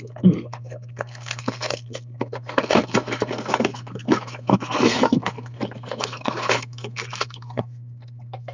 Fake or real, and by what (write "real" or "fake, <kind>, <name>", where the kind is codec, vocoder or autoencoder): fake, codec, SNAC